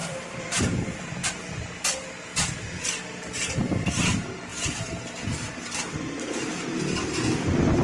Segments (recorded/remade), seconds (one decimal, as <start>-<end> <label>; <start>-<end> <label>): 0.0-0.6 remade; 0.6-1.2 recorded; 1.2-1.7 remade; 1.7-7.8 recorded